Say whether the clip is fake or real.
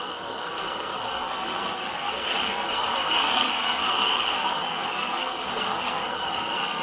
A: fake